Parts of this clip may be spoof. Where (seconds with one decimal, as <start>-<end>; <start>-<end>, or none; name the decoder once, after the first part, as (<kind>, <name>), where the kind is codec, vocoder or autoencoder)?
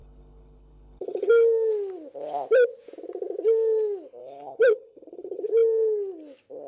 0.0-1.3 (codec, HILCodec); 4.2-5.5